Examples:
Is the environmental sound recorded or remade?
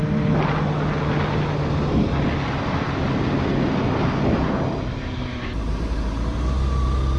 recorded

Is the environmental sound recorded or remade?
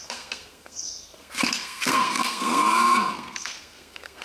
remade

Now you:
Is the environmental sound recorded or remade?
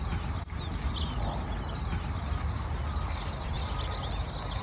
recorded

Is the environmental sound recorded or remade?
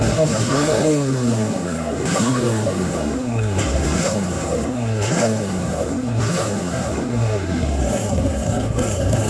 remade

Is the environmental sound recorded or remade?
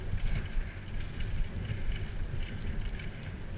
recorded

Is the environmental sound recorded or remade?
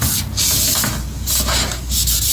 recorded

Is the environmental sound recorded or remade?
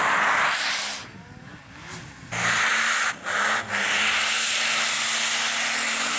recorded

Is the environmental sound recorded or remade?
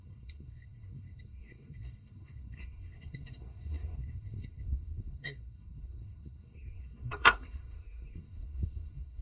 remade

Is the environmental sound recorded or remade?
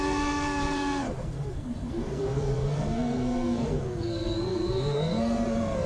remade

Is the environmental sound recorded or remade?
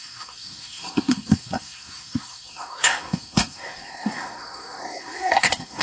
remade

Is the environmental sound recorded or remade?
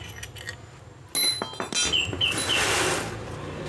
recorded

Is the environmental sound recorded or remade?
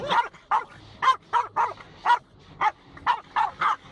recorded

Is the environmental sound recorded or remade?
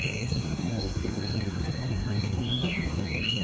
remade